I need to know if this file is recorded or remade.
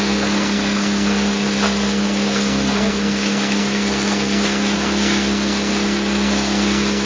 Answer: remade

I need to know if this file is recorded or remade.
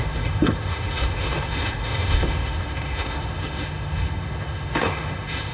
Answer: remade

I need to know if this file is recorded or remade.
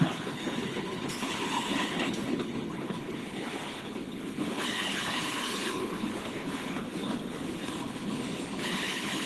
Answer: remade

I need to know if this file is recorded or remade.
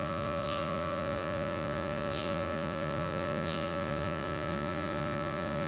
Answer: remade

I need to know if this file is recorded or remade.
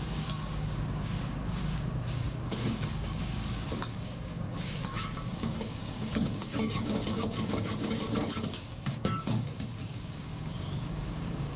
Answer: remade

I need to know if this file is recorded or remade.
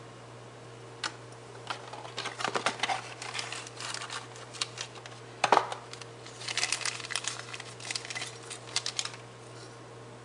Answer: recorded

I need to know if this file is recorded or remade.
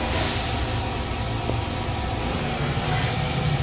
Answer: recorded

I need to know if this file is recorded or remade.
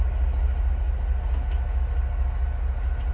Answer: recorded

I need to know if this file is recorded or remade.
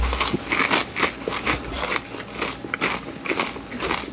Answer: recorded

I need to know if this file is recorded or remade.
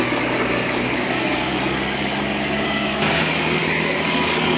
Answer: remade